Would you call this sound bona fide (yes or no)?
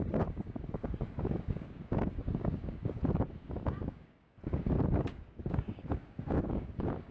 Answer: no